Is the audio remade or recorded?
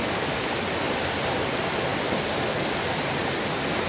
recorded